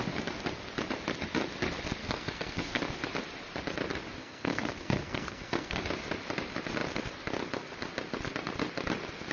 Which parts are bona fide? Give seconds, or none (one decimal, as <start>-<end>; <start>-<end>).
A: 0.0-2.0; 2.8-4.2; 5.8-9.3

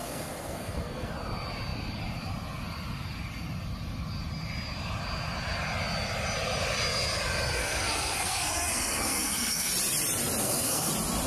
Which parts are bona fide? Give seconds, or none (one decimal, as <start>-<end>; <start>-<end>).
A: 1.1-7.6; 9.7-10.4; 10.9-11.3